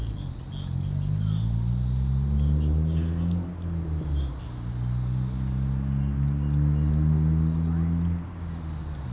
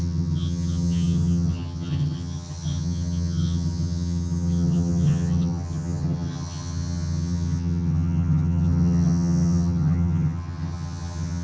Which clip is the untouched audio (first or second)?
first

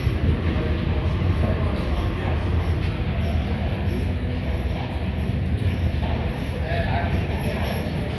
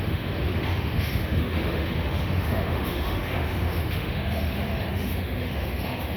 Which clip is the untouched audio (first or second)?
first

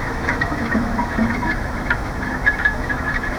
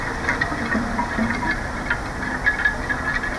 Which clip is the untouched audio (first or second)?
second